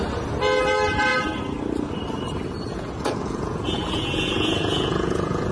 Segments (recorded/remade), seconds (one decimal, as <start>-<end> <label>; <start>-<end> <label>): 0.0-2.7 recorded; 2.7-5.5 remade